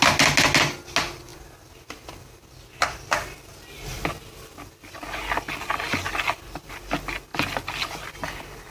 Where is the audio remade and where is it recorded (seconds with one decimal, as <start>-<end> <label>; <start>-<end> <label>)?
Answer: 0.0-8.7 recorded